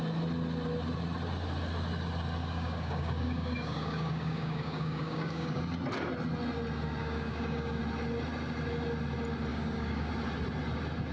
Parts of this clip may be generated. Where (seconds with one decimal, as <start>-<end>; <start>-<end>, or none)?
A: 2.4-5.6; 7.0-7.8; 9.5-10.1